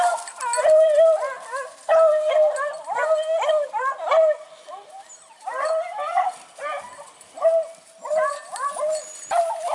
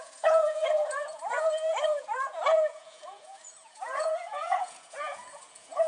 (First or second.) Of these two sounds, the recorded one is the first